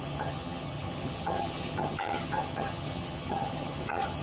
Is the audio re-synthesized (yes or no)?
yes